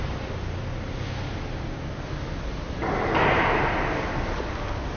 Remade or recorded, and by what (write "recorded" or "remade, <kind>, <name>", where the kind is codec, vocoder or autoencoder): recorded